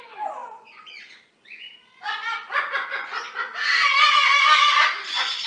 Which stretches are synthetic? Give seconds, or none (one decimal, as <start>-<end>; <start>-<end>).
0.4-3.7